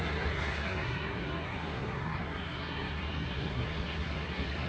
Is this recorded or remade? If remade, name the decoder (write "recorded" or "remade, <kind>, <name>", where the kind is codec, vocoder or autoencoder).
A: remade, codec, SNAC